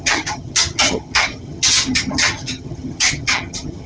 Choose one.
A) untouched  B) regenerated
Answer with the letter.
B